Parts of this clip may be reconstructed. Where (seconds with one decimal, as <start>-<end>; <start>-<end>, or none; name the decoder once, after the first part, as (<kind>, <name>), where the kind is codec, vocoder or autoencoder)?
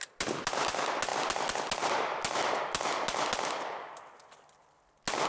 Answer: none